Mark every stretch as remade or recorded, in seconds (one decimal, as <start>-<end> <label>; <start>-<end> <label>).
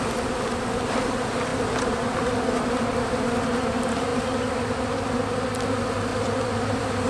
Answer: 0.0-6.1 recorded; 6.1-7.1 remade